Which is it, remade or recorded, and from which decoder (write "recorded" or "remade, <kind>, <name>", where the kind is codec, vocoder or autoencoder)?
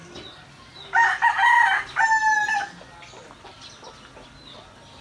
recorded